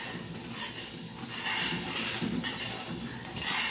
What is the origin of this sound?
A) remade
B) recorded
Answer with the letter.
B